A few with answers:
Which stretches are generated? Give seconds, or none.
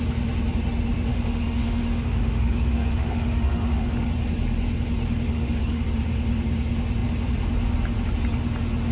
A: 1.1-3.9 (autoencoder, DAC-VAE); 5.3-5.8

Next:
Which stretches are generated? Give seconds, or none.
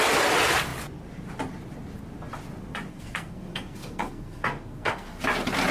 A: 2.9-5.2 (codec, SNAC)